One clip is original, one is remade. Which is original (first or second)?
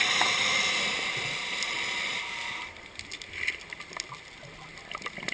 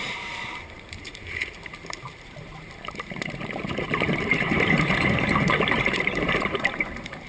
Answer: first